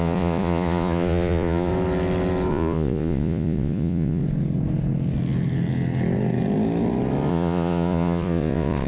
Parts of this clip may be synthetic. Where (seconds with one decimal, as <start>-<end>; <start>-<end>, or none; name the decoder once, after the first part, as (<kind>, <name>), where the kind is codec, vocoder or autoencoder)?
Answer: 0.0-1.7 (vocoder, Vocos); 2.5-4.2; 7.3-8.9